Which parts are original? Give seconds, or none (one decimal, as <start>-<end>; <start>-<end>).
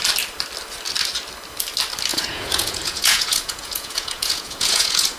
0.0-2.1